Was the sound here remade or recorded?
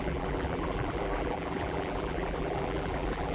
remade